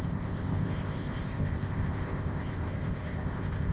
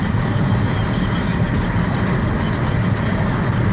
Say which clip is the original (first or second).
second